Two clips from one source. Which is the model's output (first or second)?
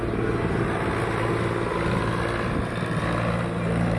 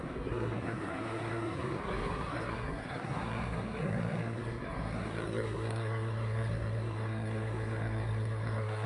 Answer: second